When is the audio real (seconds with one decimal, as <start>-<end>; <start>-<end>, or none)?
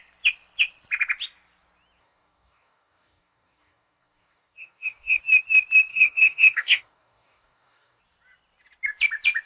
0.0-2.0; 5.2-5.9; 8.0-9.5